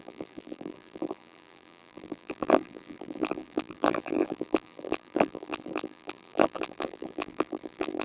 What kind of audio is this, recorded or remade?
remade